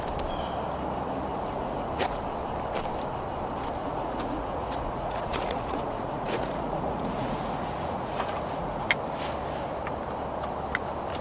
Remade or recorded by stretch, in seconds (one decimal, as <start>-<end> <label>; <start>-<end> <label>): 0.0-1.3 recorded; 1.3-2.2 remade; 2.2-3.8 recorded; 3.8-8.9 remade; 8.9-11.2 recorded